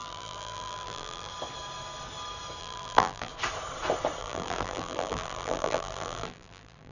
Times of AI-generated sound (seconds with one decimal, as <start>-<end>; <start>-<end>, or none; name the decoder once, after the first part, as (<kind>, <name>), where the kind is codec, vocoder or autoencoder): 0.0-1.3 (vocoder, BigVGAN v2); 2.6-3.3; 4.2-6.9